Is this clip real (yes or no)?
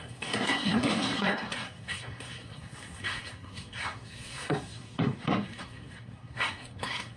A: no